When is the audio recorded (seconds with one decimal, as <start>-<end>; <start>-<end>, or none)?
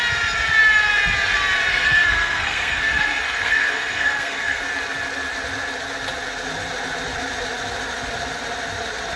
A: 0.0-1.7; 4.6-9.2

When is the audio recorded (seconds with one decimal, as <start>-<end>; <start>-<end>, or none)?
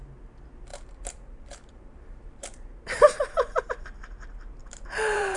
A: 0.0-0.7; 3.6-4.6